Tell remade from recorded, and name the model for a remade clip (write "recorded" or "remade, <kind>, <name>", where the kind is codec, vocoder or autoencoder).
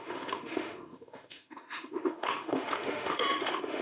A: remade, autoencoder, DAC-VAE